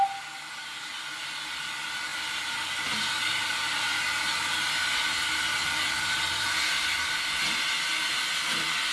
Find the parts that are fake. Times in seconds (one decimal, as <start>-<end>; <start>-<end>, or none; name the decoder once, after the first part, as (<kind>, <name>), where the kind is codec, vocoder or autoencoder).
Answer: none